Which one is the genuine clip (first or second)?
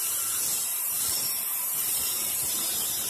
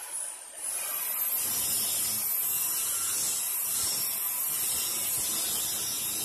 second